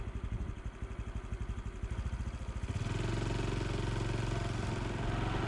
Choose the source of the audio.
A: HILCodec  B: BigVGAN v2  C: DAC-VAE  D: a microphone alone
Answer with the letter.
D